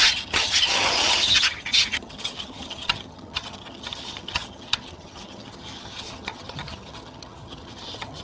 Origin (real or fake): fake